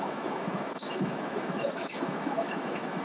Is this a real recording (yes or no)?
no